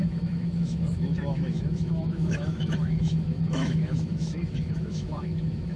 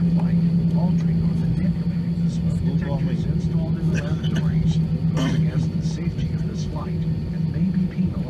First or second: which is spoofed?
first